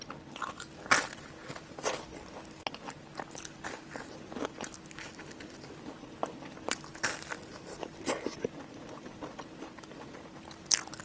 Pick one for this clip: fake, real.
real